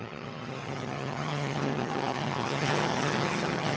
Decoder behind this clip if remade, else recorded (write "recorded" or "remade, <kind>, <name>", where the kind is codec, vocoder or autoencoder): remade, vocoder, HiFi-GAN